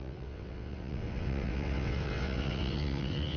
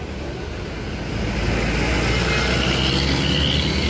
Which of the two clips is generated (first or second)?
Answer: first